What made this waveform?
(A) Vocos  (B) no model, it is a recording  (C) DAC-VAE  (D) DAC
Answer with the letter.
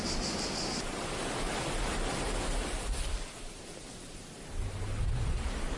B